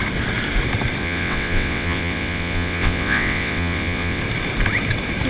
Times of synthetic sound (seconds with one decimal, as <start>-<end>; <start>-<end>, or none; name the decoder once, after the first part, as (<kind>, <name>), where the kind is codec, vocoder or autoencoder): 1.0-4.2 (vocoder, WaveNeXt)